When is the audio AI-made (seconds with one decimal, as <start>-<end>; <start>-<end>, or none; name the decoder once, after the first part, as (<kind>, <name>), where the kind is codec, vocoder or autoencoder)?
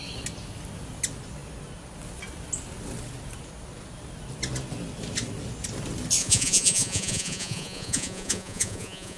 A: 6.2-9.2 (vocoder, Vocos)